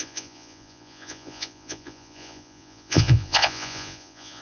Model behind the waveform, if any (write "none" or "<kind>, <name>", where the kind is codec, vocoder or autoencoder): vocoder, Vocos